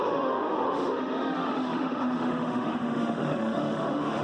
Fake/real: fake